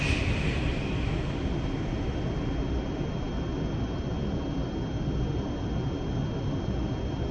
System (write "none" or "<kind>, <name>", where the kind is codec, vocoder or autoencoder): none